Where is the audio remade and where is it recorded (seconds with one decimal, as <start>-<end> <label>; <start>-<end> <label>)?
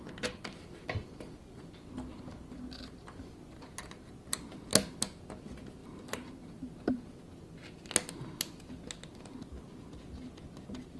0.0-5.8 recorded; 5.8-7.0 remade; 7.0-11.0 recorded